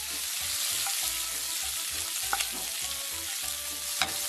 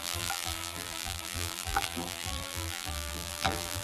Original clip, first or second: first